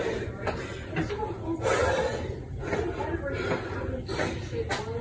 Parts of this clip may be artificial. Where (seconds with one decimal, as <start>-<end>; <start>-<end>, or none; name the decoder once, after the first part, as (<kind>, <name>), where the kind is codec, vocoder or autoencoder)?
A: none